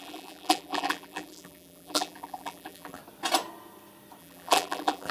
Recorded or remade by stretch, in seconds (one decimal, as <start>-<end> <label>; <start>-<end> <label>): 0.0-3.0 remade; 3.0-4.2 recorded; 4.2-5.1 remade

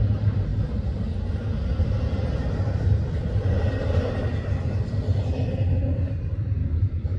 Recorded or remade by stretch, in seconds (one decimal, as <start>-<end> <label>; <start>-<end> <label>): 0.0-6.6 recorded; 6.6-7.2 remade

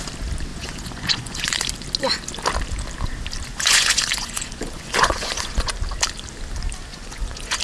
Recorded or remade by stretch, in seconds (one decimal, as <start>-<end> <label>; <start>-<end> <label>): 0.0-0.5 recorded; 0.5-1.6 remade; 1.6-3.5 recorded; 3.5-5.7 remade; 5.7-6.9 recorded; 6.9-7.6 remade